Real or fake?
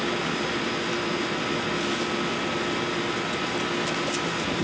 real